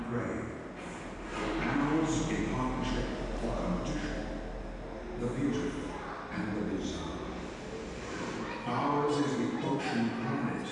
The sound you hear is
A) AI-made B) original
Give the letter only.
B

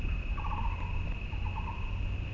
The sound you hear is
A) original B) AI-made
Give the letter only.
A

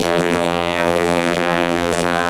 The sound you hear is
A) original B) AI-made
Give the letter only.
B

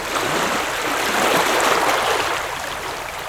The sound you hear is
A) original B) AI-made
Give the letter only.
A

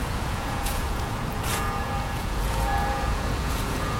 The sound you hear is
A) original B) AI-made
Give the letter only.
B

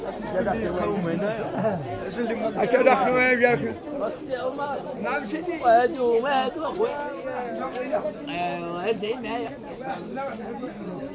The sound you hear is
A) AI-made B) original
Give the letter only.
B